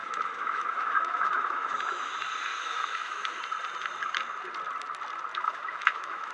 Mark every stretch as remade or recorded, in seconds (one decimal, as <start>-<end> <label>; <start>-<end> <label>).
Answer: 0.0-2.1 remade; 2.1-2.5 recorded; 2.5-3.4 remade; 3.4-5.3 recorded; 5.3-6.3 remade